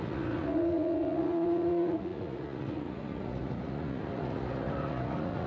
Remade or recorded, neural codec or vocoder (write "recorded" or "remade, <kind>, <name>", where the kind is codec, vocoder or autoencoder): remade, vocoder, Vocos